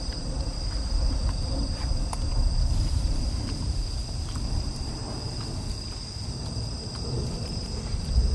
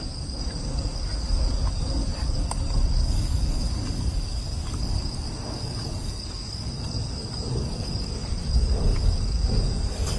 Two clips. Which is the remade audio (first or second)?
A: second